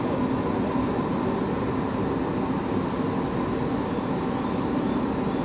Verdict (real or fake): real